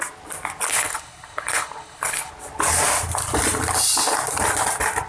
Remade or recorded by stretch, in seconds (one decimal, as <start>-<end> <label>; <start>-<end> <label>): 0.0-0.7 recorded; 0.7-2.3 remade; 2.3-5.1 recorded